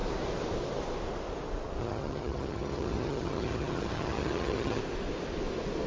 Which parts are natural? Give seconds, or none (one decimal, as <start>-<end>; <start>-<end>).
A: 0.0-1.8; 4.8-5.9